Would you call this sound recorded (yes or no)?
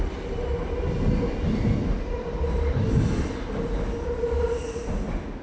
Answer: yes